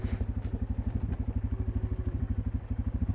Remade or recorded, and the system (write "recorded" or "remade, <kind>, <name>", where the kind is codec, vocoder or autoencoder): recorded